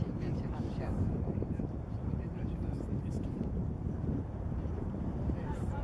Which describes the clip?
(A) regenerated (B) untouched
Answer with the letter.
A